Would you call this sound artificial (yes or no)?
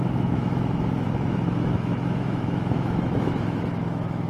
yes